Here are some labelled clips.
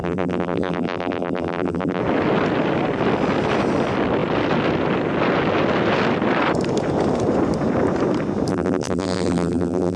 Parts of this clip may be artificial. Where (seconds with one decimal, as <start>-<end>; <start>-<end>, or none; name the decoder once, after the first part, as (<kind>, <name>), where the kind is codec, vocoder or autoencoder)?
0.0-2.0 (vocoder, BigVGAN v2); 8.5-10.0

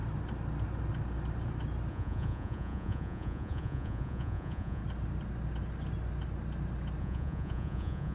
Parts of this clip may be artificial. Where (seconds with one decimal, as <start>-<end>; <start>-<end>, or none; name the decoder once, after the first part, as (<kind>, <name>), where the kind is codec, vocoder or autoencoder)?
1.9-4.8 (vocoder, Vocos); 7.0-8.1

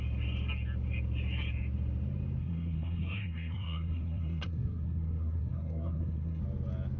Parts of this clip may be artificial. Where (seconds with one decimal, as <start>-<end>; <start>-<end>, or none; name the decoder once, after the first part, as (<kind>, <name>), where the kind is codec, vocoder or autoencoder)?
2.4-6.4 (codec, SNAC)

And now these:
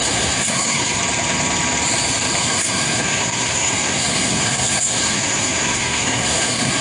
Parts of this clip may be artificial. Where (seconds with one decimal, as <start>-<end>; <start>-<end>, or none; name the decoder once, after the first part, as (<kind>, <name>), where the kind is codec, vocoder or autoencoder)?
0.0-1.0 (codec, SNAC); 2.4-6.8